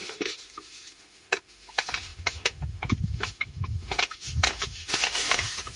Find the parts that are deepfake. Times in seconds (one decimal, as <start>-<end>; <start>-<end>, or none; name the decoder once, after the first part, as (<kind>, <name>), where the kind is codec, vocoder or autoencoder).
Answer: 0.0-5.8 (autoencoder, DAC-VAE)